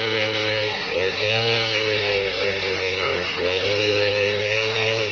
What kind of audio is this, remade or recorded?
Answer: remade